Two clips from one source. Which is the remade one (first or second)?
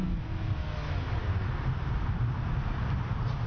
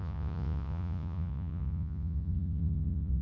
second